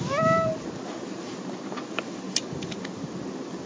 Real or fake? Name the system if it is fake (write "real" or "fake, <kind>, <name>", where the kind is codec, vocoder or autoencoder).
real